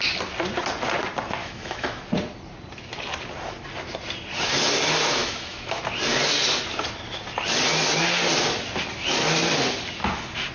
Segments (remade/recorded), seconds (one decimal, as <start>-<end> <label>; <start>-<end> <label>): 0.0-1.4 recorded; 1.4-2.0 remade; 2.0-5.2 recorded; 5.2-5.8 remade; 5.8-10.5 recorded

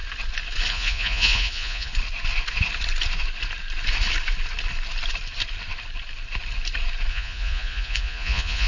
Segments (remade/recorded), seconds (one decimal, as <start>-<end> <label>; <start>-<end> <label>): 0.0-0.7 recorded; 0.7-1.9 remade; 1.9-7.1 recorded; 7.1-8.7 remade

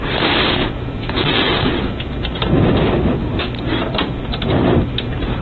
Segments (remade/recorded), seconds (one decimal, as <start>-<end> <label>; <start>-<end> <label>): 0.0-0.6 recorded; 0.6-2.1 remade; 2.1-5.4 recorded

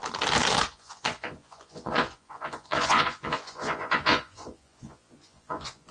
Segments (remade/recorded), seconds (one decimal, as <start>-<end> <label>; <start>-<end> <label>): 0.0-0.7 recorded; 0.7-5.9 remade

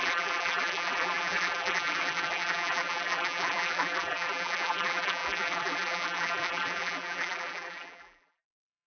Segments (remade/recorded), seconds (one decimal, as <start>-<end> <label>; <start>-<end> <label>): 0.0-8.9 remade

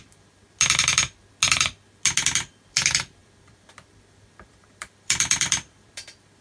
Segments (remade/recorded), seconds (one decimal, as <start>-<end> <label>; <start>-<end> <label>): 0.0-0.4 remade; 0.4-2.5 recorded; 2.5-6.4 remade

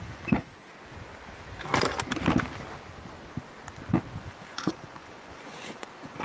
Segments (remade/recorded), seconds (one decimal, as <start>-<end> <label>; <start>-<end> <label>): 0.0-0.5 remade; 0.5-4.2 recorded; 4.2-6.2 remade

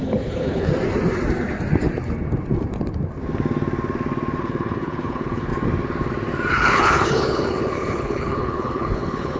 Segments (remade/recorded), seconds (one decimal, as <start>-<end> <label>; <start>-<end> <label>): 0.0-0.7 remade; 0.7-4.4 recorded; 4.4-5.5 remade; 5.5-6.5 recorded; 6.5-9.4 remade